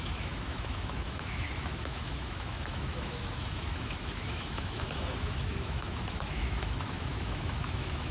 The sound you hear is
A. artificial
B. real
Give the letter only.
A